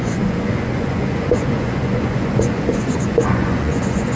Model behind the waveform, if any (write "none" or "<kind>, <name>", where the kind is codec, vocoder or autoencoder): vocoder, Vocos